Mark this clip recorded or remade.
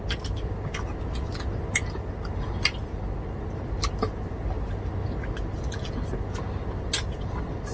recorded